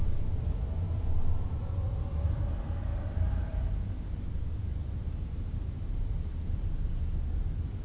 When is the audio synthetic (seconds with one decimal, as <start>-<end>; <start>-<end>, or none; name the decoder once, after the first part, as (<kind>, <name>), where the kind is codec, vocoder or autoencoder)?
2.9-3.7 (vocoder, BigVGAN v2); 4.8-6.9